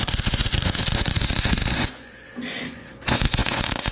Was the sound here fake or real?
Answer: fake